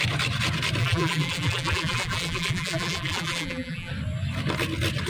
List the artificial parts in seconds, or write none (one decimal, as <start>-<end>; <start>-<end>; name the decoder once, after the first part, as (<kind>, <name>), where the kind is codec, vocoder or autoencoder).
0.8-3.9 (vocoder, BigVGAN v2)